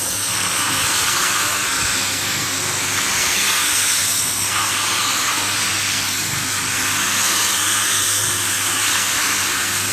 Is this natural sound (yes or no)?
no